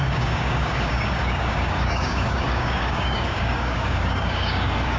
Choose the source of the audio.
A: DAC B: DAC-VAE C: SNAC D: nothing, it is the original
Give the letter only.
A